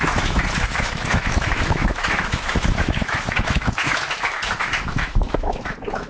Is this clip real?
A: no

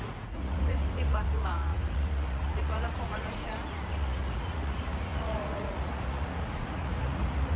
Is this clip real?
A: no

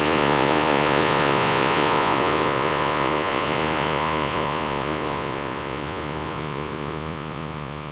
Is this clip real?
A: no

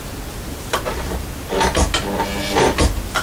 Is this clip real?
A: yes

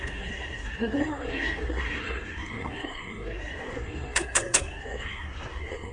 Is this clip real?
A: no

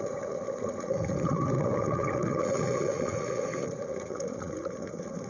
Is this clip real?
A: no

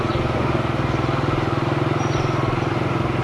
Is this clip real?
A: yes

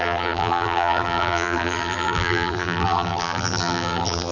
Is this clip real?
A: no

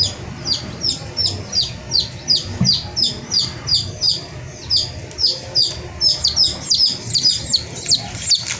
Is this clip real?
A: yes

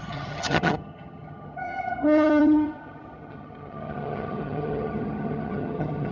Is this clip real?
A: no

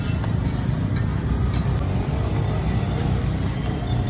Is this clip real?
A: yes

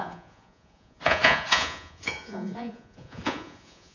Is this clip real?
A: no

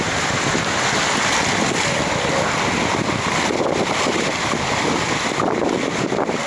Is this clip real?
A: yes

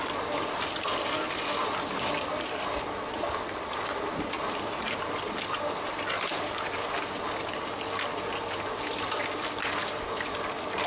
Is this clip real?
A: yes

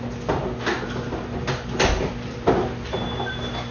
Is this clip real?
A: yes